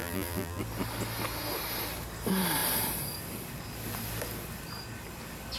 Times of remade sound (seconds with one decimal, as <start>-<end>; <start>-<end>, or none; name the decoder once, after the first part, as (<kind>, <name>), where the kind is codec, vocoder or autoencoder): 0.0-0.6 (vocoder, BigVGAN v2)

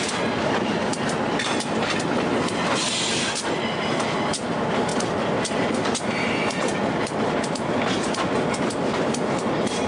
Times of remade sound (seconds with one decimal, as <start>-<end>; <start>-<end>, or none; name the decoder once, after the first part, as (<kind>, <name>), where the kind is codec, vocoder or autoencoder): none

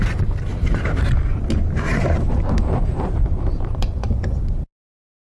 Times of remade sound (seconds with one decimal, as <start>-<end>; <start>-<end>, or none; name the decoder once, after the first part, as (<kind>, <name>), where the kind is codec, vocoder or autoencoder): 0.5-1.2 (vocoder, BigVGAN v2); 1.9-5.4

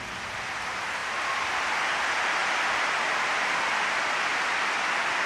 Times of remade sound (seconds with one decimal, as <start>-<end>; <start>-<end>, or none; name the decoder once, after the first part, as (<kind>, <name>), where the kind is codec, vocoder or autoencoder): 2.4-4.0 (vocoder, BigVGAN v2)

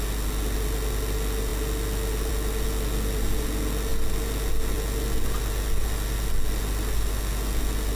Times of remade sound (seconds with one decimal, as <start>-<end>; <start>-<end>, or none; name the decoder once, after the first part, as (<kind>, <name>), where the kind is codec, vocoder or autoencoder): none

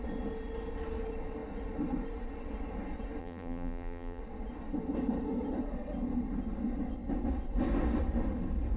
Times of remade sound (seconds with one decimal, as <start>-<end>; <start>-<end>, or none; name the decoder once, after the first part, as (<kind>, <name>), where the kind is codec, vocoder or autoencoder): 3.2-4.2 (vocoder, BigVGAN v2)